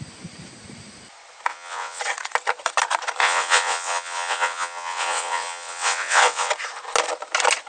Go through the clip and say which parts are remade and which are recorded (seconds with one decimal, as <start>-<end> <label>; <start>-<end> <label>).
0.0-1.5 recorded; 1.5-2.0 remade; 2.0-3.2 recorded; 3.2-6.5 remade; 6.5-7.7 recorded